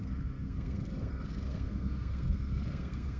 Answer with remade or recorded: remade